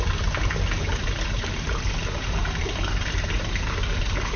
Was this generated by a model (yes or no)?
no